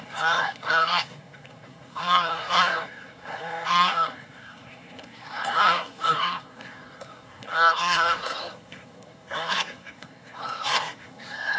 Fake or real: fake